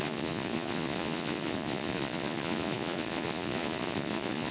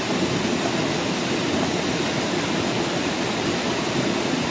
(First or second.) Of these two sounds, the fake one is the first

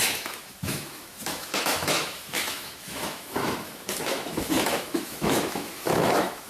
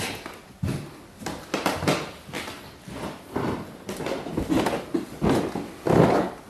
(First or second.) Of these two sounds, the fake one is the first